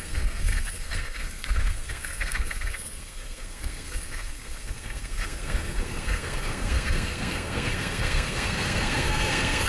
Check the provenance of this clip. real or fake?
fake